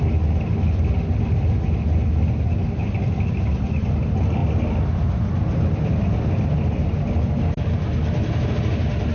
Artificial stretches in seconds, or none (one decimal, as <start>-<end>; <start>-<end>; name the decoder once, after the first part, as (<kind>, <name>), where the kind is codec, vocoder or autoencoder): none